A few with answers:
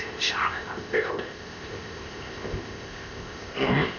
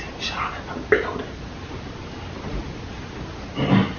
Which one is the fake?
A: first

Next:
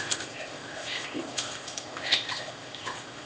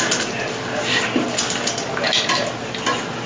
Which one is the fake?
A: first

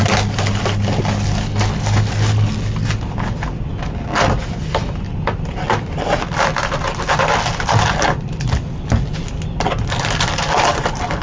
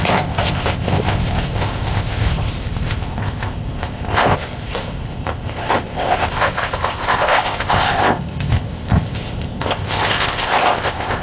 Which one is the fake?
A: second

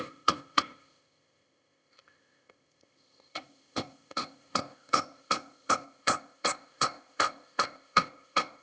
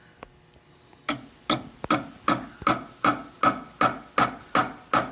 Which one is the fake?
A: first